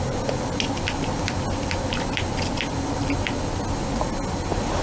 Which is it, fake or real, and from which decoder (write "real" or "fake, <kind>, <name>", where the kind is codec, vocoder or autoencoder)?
real